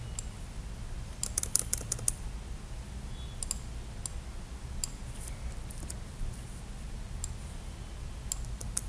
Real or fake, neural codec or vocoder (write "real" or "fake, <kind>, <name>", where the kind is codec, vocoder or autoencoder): real